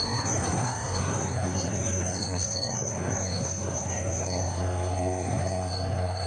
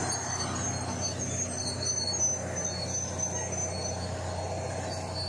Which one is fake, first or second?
first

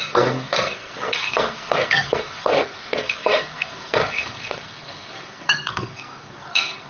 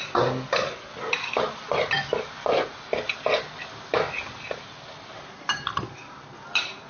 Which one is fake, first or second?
first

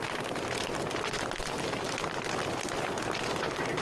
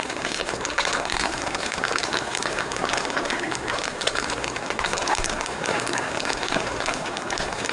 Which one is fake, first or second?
second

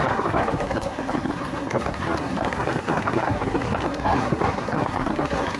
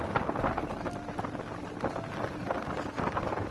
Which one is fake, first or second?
first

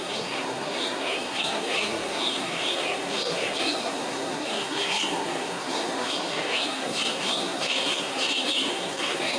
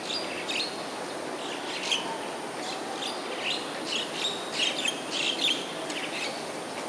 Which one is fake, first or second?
first